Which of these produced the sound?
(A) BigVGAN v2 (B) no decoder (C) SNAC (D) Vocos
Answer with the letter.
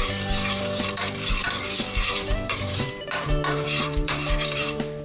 A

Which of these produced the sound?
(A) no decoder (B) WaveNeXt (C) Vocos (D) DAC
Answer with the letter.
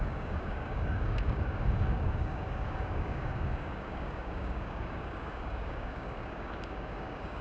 D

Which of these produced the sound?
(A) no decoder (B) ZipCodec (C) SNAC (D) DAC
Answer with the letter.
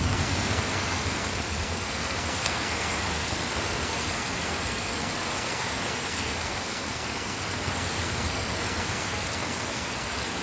C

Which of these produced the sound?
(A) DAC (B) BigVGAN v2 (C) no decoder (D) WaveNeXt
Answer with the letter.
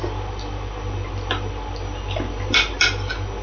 C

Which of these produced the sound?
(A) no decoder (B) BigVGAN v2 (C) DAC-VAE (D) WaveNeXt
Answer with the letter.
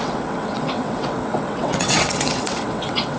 D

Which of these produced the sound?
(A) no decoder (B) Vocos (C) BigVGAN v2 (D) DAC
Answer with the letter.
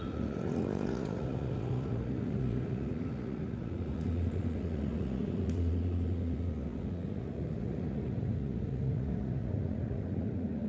B